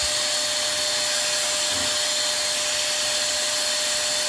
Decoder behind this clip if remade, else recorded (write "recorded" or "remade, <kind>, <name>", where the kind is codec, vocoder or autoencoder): recorded